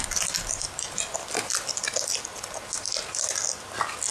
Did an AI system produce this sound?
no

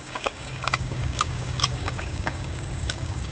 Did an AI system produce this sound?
yes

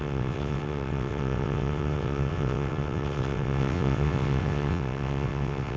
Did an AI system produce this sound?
yes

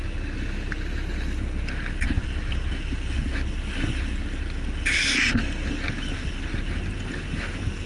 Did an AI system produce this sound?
no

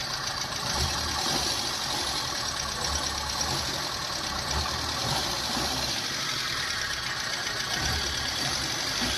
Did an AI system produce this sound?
no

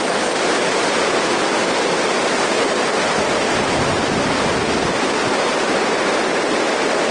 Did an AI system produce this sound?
no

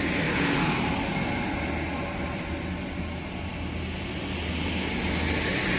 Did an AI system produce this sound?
no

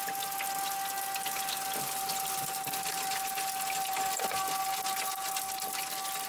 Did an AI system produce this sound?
no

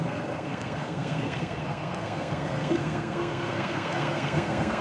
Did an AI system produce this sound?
yes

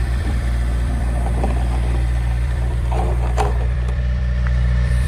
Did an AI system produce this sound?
yes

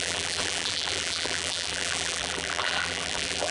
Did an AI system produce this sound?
yes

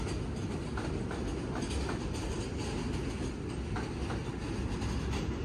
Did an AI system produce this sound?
no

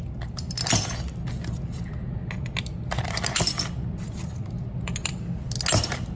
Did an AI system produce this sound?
no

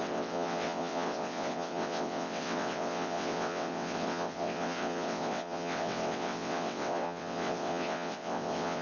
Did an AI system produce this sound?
yes